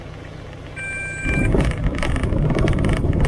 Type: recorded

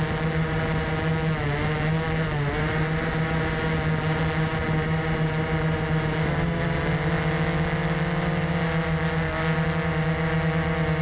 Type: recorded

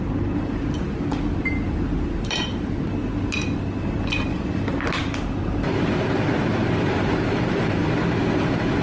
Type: recorded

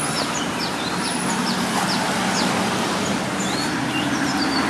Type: recorded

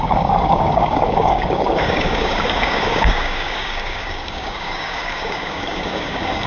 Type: remade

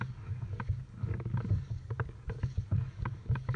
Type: remade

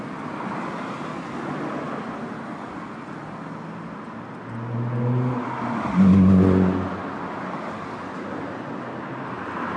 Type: recorded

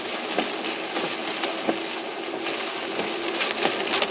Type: recorded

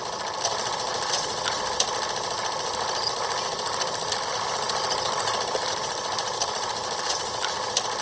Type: recorded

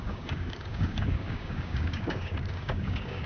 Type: remade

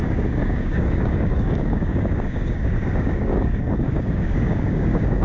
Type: remade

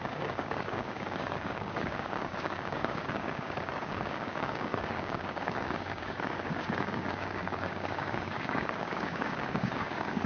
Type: remade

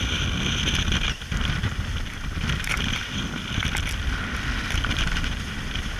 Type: recorded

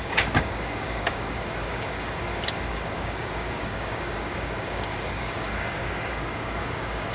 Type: remade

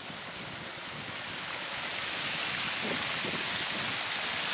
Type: recorded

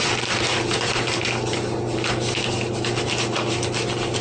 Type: recorded